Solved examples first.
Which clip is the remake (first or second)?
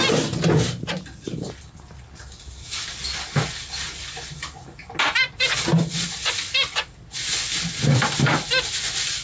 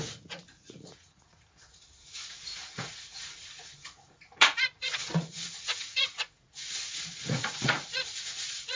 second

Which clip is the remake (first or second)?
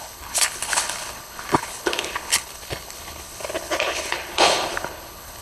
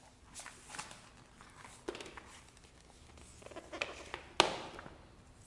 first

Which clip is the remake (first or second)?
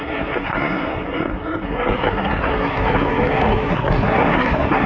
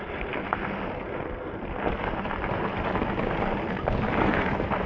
first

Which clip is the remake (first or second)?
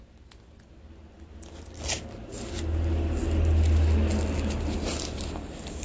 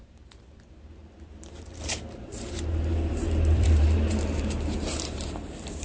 second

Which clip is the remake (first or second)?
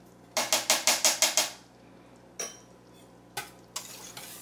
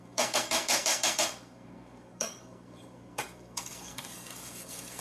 second